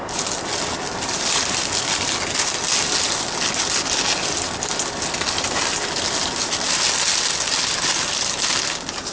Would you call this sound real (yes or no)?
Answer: yes